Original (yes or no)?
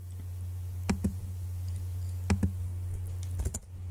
yes